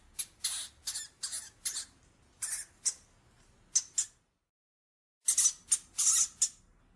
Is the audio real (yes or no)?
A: yes